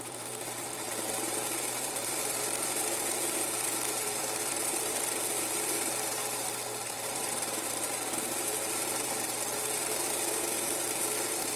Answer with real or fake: fake